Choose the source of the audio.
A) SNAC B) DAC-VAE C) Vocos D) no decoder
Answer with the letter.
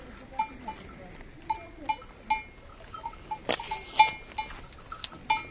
D